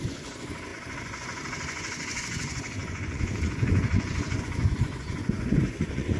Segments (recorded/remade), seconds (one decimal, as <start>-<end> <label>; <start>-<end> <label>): 0.0-6.2 remade